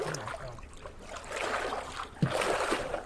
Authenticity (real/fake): real